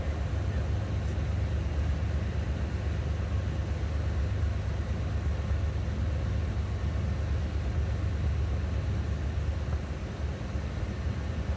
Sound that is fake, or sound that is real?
real